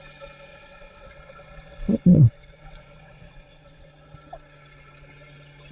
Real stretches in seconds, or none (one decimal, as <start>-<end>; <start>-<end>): 0.0-0.5; 3.9-5.7